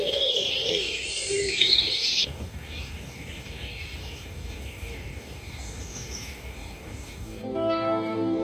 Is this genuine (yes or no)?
no